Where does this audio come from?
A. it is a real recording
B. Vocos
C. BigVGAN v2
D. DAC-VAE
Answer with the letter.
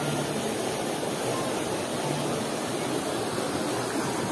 A